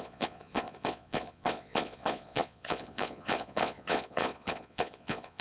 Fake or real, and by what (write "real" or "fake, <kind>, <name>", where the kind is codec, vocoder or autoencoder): fake, vocoder, Vocos